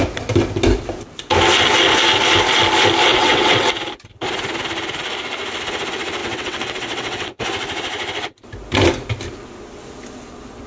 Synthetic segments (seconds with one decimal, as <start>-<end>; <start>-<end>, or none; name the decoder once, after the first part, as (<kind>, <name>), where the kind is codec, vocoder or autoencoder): 3.1-3.7 (vocoder, WaveNeXt); 6.2-7.4